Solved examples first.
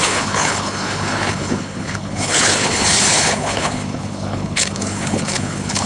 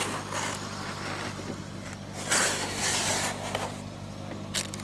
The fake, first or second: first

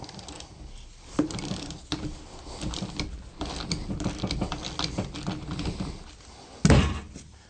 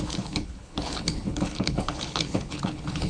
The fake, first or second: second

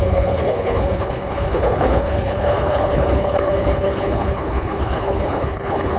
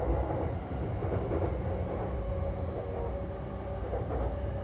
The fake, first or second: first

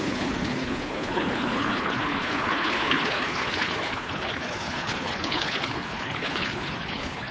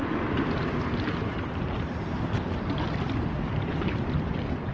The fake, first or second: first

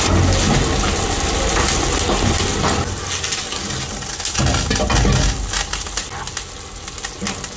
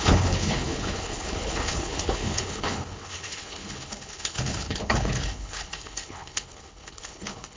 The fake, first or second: second